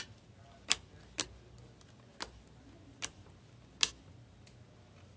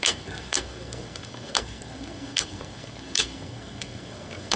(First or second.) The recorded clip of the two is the first